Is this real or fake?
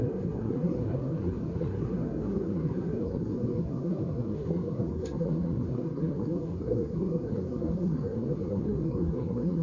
fake